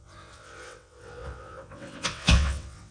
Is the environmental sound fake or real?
fake